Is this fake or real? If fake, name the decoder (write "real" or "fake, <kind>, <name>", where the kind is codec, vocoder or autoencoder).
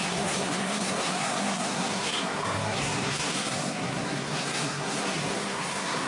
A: fake, codec, SNAC